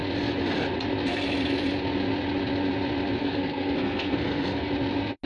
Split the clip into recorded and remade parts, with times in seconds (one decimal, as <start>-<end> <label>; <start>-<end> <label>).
0.0-3.2 recorded; 3.2-4.7 remade; 4.7-5.3 recorded